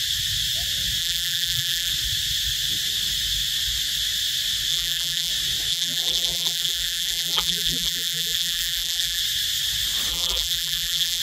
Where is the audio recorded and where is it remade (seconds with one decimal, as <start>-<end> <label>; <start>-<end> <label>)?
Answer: 0.0-1.0 recorded; 1.0-1.9 remade; 1.9-4.7 recorded; 4.7-5.3 remade; 5.3-5.7 recorded; 5.7-9.2 remade; 9.2-10.1 recorded; 10.1-11.2 remade